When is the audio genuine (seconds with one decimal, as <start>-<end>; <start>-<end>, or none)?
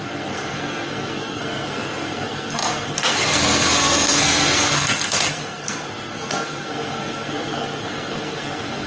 none